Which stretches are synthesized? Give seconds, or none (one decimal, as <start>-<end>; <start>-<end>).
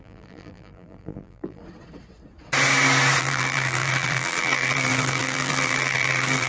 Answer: 0.0-1.6; 3.2-6.5